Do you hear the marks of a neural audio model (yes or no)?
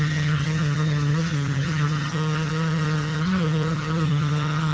yes